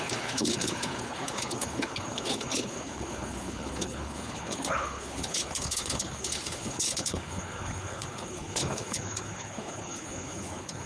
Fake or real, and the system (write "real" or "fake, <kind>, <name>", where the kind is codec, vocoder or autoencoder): fake, codec, HILCodec